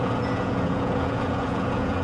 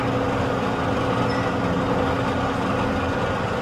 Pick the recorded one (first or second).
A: second